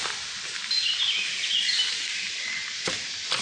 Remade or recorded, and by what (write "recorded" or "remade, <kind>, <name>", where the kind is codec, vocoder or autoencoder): recorded